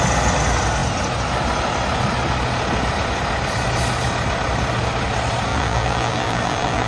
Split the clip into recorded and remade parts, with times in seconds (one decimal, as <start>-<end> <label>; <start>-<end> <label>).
0.0-5.5 recorded; 5.5-6.9 remade